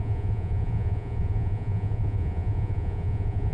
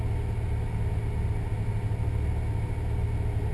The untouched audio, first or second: second